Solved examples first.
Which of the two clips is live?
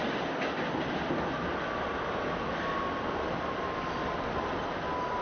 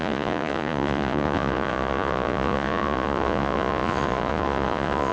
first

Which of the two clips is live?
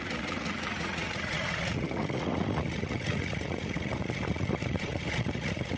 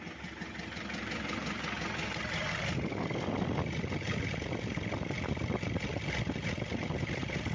second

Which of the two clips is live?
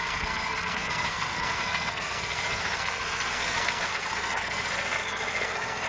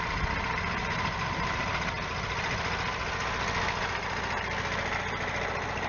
second